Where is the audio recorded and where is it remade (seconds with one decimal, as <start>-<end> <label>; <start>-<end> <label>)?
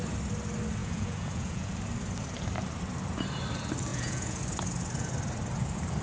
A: 0.0-0.8 recorded; 0.8-1.7 remade; 1.7-3.9 recorded; 3.9-4.4 remade; 4.4-6.0 recorded